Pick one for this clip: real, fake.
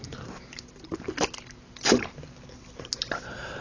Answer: real